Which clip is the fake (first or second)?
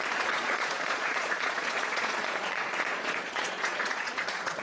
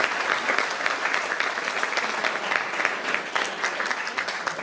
first